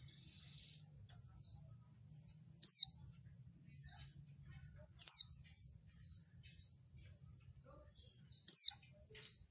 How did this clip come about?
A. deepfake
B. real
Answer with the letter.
B